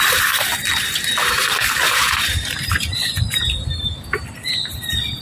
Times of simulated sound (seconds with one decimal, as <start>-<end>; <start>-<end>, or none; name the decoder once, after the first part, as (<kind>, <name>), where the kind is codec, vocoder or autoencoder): 1.6-3.9 (vocoder, BigVGAN v2)